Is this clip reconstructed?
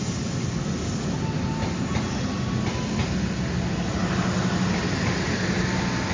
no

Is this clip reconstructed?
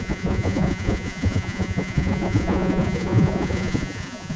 yes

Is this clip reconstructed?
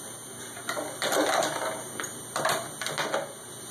no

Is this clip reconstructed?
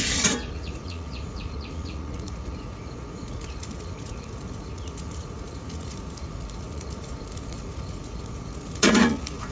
yes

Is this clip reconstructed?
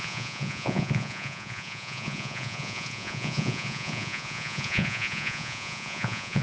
yes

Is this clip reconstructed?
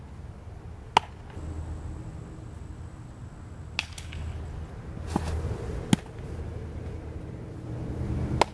no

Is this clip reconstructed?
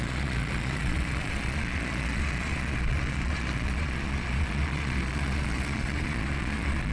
yes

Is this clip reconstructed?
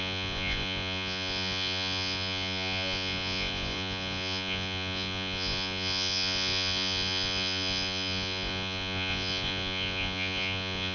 yes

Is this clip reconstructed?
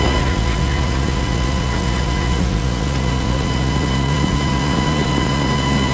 yes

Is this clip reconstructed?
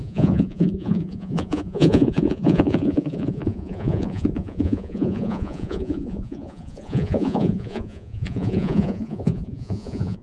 yes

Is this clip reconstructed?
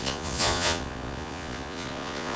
yes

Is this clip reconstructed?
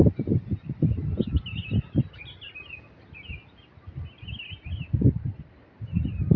no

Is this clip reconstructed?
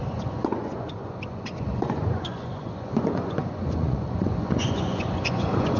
yes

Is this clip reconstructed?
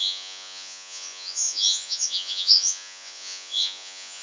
yes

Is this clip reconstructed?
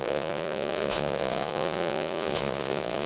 yes